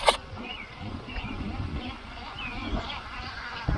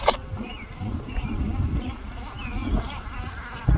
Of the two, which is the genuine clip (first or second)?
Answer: second